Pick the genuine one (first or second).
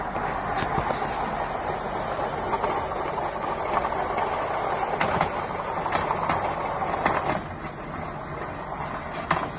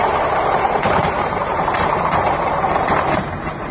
first